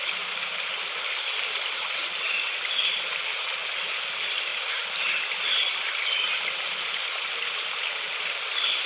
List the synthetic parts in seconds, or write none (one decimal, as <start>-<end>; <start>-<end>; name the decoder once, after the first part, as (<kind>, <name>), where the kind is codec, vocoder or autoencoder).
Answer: none